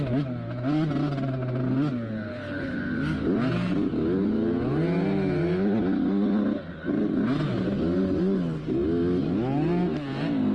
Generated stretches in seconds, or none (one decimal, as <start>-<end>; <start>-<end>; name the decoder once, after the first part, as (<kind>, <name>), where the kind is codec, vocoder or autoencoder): 2.3-2.8 (codec, HILCodec)